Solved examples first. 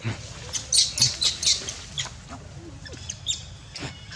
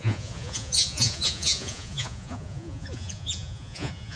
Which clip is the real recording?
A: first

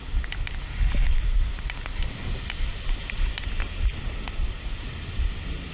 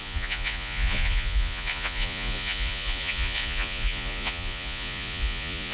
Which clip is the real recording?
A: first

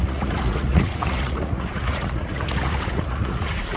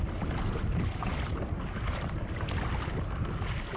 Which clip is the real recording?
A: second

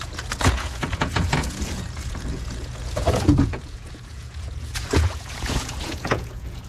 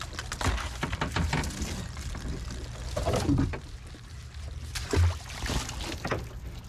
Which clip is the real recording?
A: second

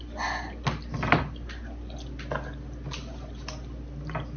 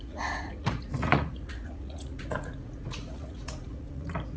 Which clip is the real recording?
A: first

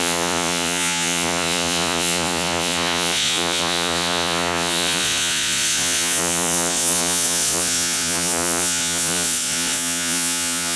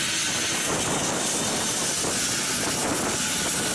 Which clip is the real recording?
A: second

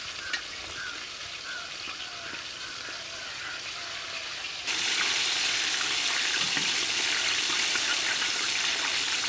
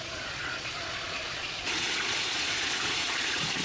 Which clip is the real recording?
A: first